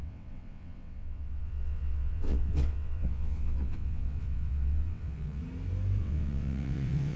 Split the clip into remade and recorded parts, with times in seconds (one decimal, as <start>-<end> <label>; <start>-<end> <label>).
0.0-5.4 remade; 5.4-6.0 recorded; 6.0-7.2 remade